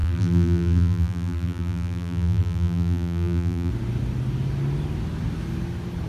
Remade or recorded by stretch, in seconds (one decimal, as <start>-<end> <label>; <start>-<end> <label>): 0.0-3.7 remade; 3.7-6.1 recorded